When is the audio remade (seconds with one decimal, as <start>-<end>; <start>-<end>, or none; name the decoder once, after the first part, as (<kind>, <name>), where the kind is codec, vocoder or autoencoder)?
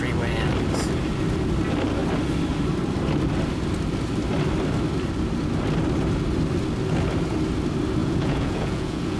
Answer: 8.0-9.2 (vocoder, Vocos)